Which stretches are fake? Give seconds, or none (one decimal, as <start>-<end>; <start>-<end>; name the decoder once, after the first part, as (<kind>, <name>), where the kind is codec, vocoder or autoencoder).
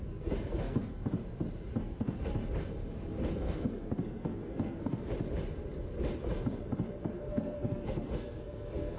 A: 0.0-1.0 (codec, SNAC); 1.8-2.4; 3.3-5.1; 7.1-9.0